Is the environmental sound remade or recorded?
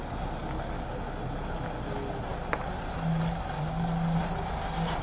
recorded